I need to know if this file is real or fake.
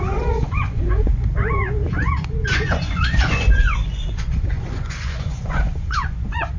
fake